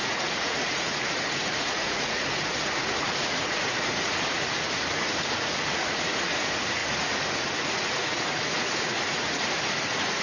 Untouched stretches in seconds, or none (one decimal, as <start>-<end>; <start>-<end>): none